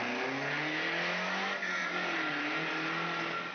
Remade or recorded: recorded